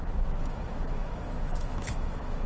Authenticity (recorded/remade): remade